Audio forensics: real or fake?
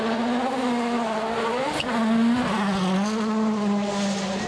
real